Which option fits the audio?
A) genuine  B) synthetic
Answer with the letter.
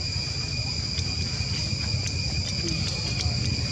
A